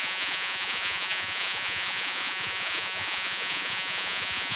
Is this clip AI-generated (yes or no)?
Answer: yes